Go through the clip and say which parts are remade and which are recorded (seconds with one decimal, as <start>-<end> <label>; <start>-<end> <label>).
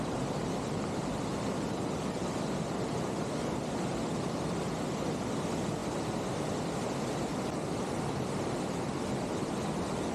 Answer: 0.0-10.1 recorded